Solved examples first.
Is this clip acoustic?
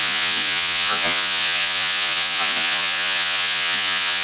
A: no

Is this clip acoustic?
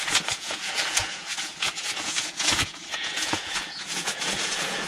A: no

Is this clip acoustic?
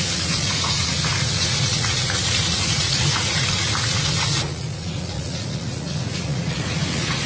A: no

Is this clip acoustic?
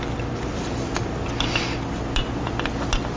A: yes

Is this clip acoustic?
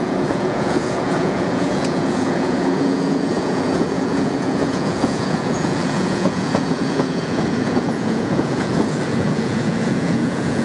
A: no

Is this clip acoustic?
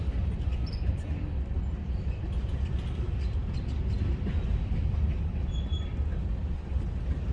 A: yes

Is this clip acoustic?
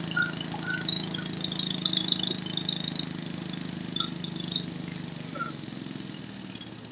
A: yes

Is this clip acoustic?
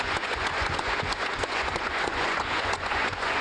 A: no